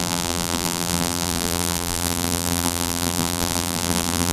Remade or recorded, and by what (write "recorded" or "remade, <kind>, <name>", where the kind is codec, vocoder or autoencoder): remade, vocoder, BigVGAN v2